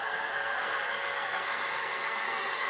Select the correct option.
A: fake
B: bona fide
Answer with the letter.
A